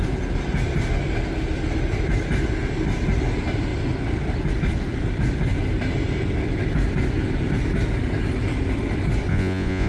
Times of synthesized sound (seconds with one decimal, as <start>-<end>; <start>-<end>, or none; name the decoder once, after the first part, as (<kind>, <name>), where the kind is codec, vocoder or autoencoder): 9.3-9.9 (vocoder, Vocos)